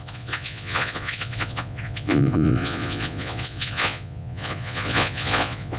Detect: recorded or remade remade